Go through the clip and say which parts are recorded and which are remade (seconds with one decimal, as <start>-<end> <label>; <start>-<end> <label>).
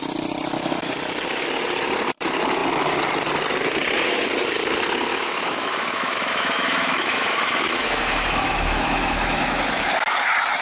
0.0-5.1 recorded; 5.1-9.6 remade; 9.6-10.6 recorded